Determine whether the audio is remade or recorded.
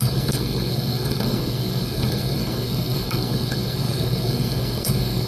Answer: remade